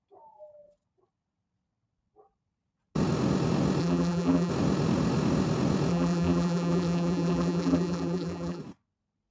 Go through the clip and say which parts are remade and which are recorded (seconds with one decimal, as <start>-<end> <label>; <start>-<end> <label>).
0.0-3.8 recorded; 3.8-4.5 remade; 4.5-5.9 recorded; 5.9-8.6 remade; 8.6-9.3 recorded